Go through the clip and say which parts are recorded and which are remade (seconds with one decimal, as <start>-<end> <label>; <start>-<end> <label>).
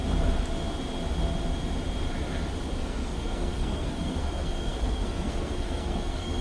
0.0-2.8 recorded; 2.8-6.4 remade